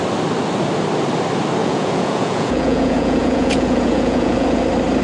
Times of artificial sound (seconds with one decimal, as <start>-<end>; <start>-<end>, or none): 1.6-4.6